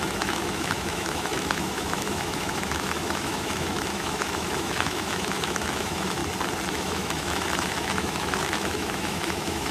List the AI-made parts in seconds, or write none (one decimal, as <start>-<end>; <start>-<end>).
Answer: 0.0-6.2; 6.7-9.7